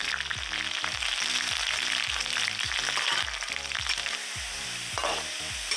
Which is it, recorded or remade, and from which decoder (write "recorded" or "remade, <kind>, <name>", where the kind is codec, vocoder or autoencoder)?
recorded